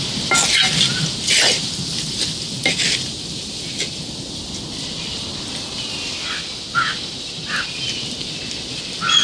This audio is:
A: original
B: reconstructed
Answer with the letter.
A